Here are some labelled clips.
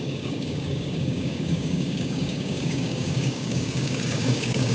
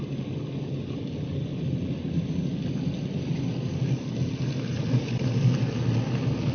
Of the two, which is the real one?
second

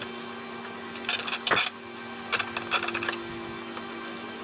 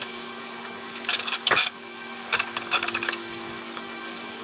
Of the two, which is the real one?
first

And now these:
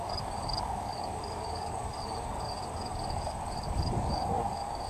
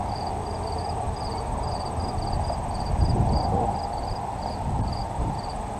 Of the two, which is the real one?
second